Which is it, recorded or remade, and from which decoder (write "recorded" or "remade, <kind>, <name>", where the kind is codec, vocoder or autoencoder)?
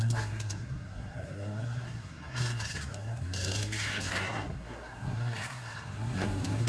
remade, codec, SNAC